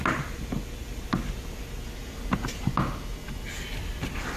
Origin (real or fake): real